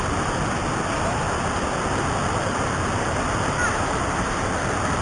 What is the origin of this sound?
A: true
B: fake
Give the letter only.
A